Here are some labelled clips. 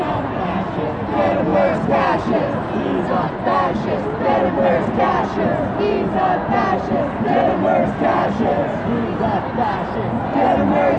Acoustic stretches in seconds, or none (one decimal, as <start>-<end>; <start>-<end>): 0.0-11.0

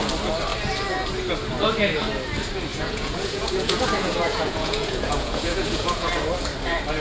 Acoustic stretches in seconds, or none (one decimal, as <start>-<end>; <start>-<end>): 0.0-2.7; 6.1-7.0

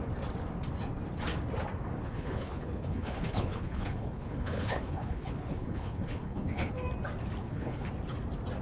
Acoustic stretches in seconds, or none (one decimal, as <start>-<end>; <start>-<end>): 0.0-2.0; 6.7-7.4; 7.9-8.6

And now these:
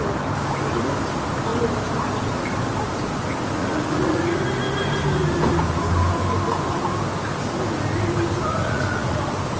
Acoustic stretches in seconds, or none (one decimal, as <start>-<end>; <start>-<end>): 0.0-3.6; 4.2-8.6; 9.2-9.6

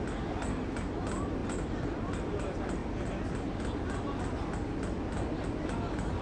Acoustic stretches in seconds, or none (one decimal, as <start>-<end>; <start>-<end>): 0.0-6.2

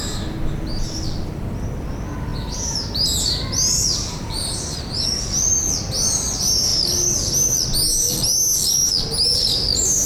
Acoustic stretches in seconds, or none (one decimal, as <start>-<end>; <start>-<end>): 0.0-2.3; 5.2-10.1